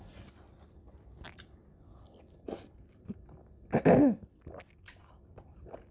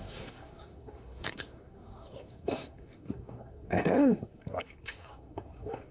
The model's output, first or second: second